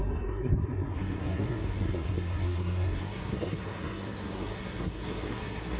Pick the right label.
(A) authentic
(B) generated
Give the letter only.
B